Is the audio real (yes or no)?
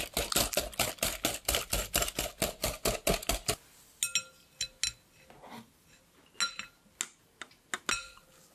yes